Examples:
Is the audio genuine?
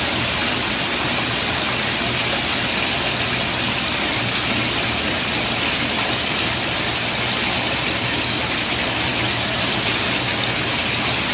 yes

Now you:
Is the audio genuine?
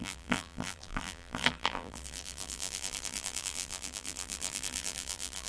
no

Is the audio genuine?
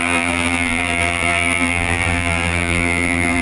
no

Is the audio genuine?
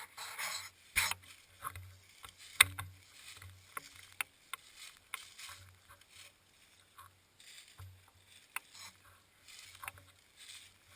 yes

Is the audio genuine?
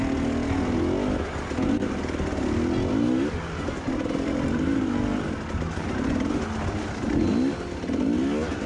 yes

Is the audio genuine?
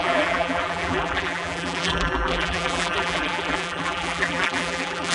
no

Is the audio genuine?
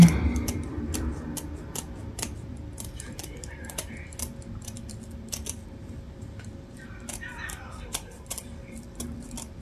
no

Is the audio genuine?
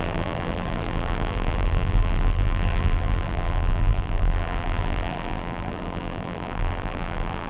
no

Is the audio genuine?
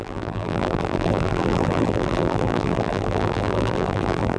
no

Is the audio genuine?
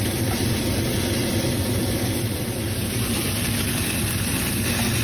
no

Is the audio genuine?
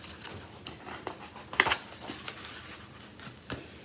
yes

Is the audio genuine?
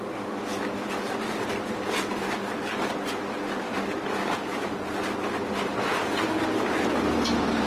yes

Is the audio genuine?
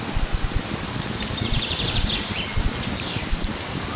no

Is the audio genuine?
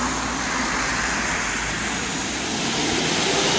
yes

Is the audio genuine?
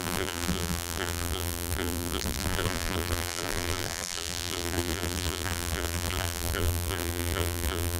no